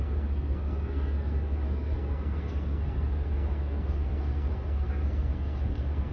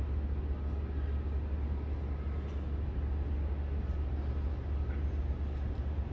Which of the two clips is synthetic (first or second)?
first